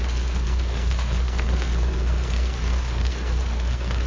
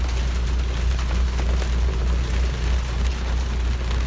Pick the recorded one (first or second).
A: second